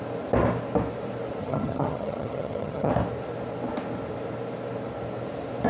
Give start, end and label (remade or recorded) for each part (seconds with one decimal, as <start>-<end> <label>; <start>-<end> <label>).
0.0-1.4 recorded; 1.4-2.9 remade; 2.9-5.7 recorded